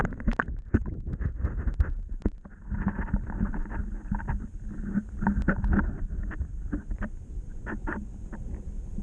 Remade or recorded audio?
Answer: remade